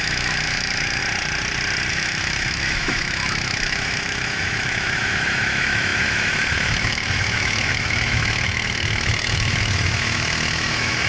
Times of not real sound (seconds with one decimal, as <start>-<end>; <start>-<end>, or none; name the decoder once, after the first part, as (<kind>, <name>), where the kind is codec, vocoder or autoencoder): 0.0-1.0 (autoencoder, DAC-VAE); 1.9-11.1